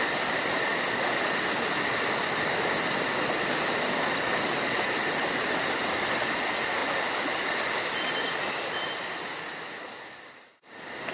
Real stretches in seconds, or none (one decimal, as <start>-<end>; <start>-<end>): 0.0-11.1